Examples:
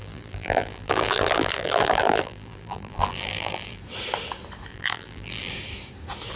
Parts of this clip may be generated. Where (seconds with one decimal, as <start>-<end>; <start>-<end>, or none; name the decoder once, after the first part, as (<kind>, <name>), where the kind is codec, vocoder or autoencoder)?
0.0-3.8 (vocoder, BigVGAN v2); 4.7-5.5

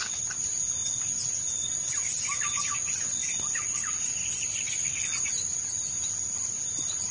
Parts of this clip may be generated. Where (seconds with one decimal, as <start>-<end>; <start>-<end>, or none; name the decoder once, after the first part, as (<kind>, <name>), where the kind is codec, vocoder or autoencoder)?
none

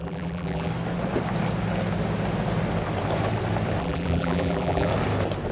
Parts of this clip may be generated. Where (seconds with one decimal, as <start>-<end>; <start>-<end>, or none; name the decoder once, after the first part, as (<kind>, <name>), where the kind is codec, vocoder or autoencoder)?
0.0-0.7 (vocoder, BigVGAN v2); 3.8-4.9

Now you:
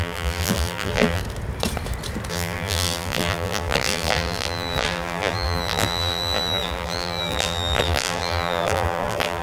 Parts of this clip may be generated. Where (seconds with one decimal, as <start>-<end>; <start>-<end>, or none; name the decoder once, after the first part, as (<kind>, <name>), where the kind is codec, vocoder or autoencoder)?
0.0-1.2 (vocoder, BigVGAN v2); 2.3-9.4